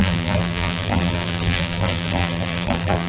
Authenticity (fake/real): fake